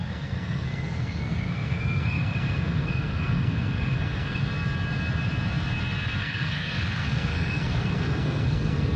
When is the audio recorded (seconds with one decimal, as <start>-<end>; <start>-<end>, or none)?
4.4-6.2